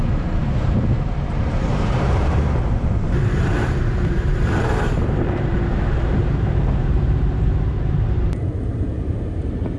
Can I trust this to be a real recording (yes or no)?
no